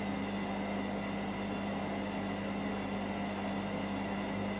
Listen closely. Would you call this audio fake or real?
real